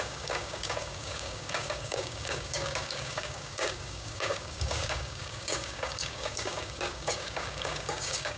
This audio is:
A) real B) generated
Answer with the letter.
B